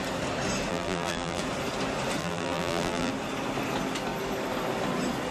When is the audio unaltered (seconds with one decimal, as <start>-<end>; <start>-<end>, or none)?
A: 0.0-0.7; 1.4-2.2; 3.1-5.3